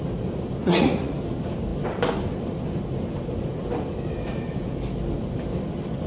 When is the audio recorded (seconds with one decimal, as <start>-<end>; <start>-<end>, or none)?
0.0-0.6; 1.2-6.1